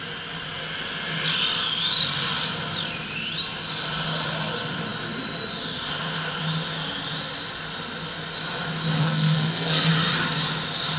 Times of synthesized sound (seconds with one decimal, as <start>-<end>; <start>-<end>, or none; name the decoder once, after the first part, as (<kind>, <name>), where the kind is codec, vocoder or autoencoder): 9.0-9.9 (codec, SNAC)